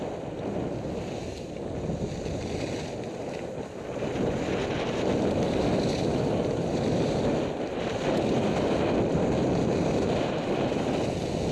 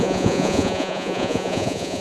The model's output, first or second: second